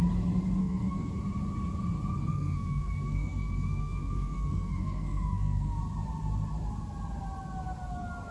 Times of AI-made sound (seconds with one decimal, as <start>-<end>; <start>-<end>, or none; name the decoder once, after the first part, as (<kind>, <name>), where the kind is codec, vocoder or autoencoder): 0.6-1.1 (codec, SNAC); 2.2-5.8